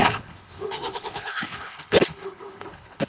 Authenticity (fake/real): fake